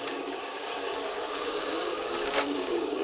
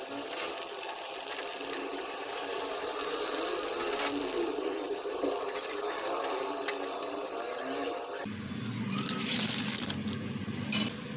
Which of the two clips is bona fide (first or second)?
second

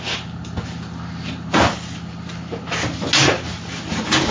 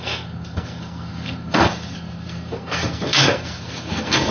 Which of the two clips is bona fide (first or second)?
first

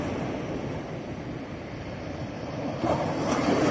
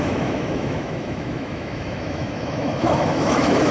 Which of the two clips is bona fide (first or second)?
first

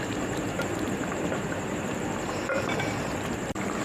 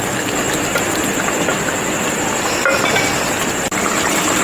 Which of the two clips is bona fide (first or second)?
second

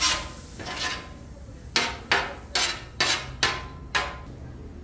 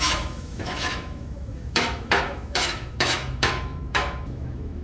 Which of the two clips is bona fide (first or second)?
first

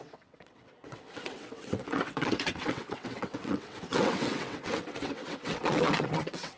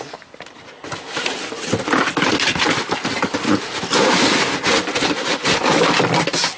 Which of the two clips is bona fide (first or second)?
second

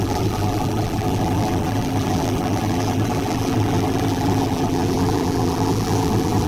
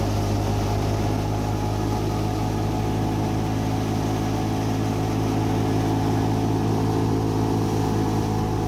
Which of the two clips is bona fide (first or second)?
second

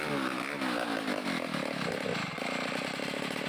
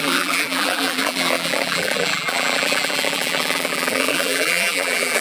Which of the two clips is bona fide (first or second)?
first